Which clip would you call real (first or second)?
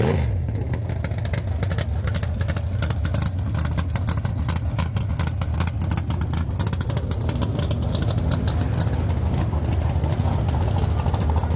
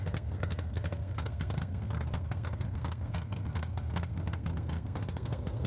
first